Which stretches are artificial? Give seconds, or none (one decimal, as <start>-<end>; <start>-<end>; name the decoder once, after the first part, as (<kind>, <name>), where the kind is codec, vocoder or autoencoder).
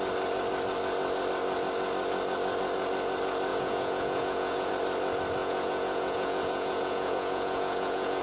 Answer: 3.5-4.7 (vocoder, Vocos); 5.4-8.2